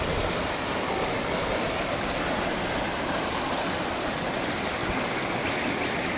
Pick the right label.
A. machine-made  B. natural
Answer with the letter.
B